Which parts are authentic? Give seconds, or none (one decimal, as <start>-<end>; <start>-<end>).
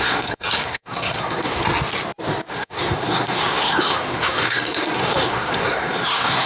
1.6-2.5